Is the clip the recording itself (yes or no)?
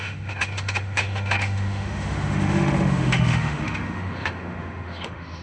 no